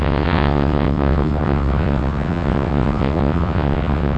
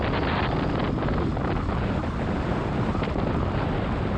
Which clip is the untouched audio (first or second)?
second